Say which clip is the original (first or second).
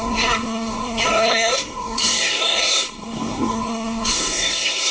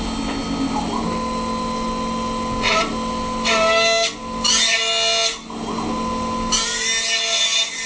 second